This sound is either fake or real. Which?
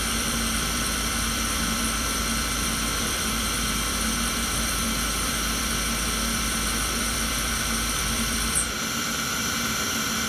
fake